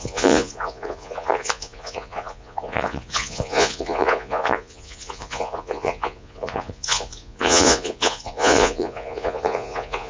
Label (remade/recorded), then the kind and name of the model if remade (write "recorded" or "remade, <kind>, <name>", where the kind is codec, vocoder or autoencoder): remade, vocoder, Vocos